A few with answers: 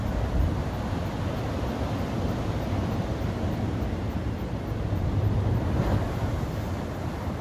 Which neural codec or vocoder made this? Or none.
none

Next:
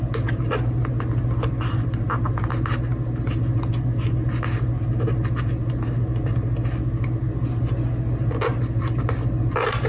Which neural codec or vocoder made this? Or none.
none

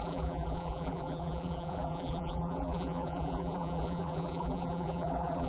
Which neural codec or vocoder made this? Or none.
vocoder, BigVGAN v2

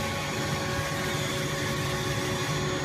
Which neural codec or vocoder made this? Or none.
none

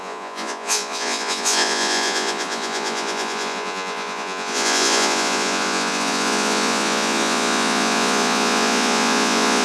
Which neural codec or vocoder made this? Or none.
vocoder, Vocos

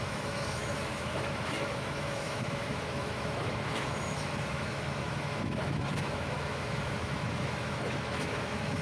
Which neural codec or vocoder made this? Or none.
autoencoder, DAC-VAE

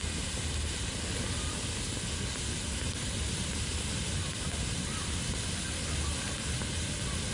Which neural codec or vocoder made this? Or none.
none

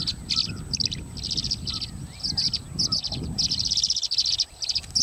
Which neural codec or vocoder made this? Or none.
none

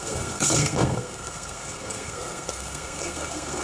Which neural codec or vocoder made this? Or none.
codec, SNAC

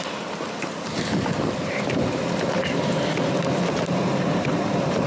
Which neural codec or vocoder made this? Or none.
vocoder, BigVGAN v2